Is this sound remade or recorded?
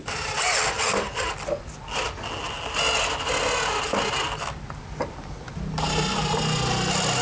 recorded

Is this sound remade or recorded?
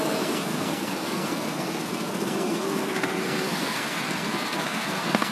remade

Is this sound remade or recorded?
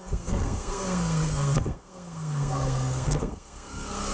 remade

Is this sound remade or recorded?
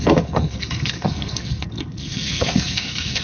remade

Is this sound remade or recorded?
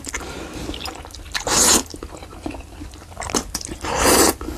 recorded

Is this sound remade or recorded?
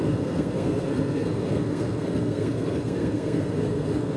remade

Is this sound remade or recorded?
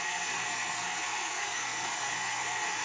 remade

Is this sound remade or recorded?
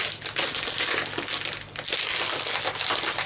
recorded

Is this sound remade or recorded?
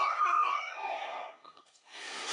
remade